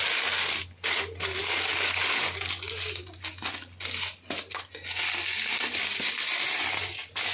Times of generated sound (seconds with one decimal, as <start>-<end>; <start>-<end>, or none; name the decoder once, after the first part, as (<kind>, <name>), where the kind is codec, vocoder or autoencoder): none